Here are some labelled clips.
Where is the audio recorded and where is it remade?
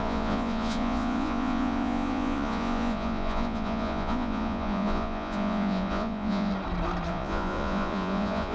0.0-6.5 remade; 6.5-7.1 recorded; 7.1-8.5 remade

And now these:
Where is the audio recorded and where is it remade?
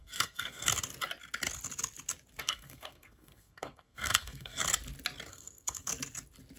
0.0-0.7 remade; 0.7-2.4 recorded; 2.4-4.6 remade; 4.6-5.3 recorded; 5.3-5.9 remade; 5.9-6.6 recorded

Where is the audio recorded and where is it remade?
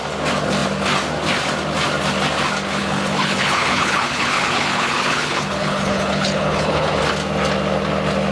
0.0-2.8 recorded; 2.8-7.0 remade; 7.0-8.3 recorded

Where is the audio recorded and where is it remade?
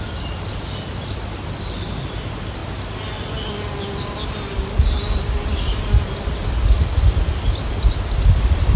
0.0-8.8 recorded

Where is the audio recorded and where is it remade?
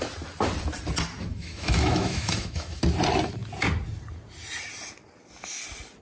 0.0-1.3 recorded; 1.3-2.8 remade; 2.8-6.0 recorded